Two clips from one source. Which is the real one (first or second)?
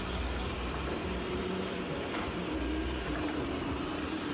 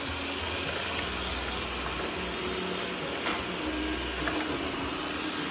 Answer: second